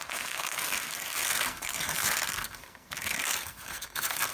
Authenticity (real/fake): fake